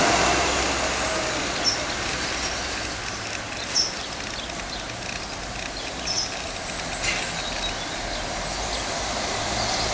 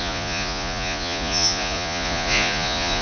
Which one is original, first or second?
first